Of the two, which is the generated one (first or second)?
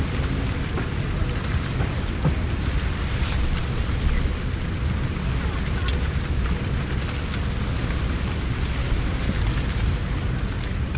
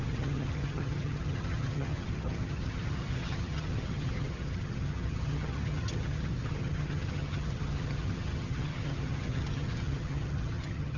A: second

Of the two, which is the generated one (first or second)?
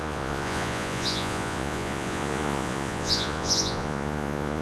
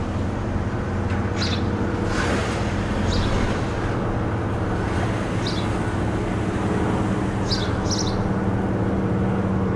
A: first